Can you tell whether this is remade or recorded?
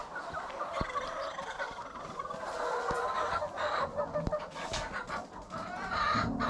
recorded